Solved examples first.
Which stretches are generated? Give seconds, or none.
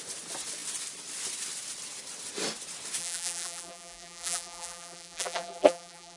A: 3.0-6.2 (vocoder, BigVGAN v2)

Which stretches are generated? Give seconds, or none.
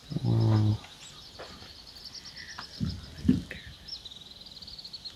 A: none